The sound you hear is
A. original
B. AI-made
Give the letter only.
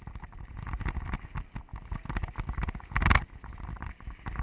A